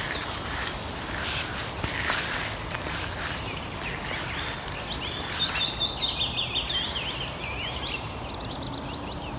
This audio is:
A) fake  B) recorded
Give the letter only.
B